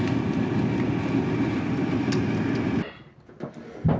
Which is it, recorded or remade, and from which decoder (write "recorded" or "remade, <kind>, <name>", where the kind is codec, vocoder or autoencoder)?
recorded